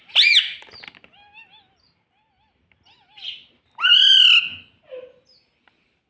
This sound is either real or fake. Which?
real